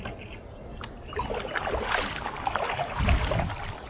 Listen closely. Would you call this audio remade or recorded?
recorded